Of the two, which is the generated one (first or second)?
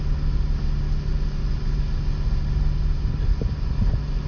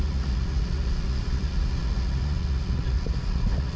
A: second